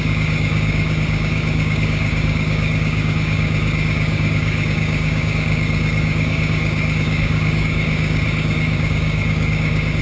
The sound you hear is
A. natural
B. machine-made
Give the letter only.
B